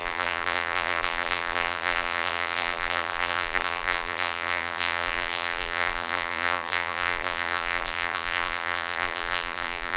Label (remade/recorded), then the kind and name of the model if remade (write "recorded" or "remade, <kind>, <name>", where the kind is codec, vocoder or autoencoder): remade, vocoder, BigVGAN v2